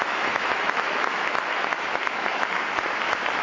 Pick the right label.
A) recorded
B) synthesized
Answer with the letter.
B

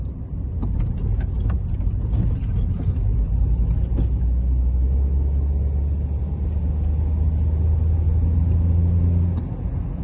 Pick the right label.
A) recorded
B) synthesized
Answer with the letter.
A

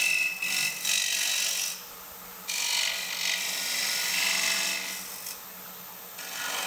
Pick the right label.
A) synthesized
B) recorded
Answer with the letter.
B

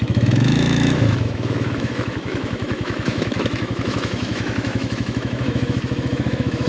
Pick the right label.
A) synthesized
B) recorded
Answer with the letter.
A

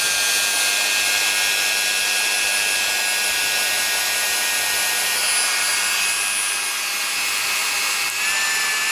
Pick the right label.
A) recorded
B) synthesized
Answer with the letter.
A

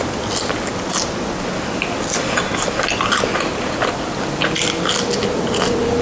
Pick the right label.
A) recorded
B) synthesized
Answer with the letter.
A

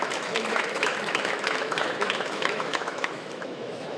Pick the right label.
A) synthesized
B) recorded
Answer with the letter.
A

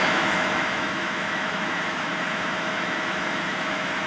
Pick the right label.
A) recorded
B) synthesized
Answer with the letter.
B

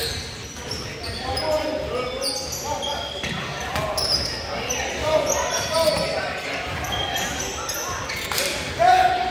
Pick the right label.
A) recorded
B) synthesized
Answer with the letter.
A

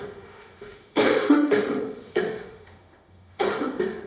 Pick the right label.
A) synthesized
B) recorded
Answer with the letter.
A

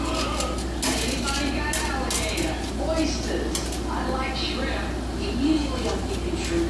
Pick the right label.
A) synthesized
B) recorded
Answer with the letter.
B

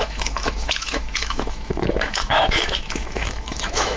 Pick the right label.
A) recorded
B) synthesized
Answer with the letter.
B